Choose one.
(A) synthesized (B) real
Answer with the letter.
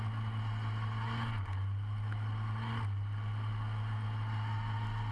B